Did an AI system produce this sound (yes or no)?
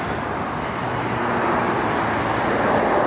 no